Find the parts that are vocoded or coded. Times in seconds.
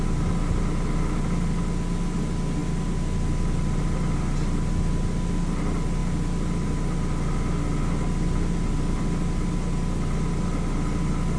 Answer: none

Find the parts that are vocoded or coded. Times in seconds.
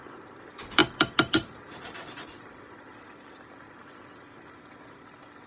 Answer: none